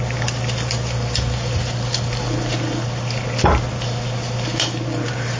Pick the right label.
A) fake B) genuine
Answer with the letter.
B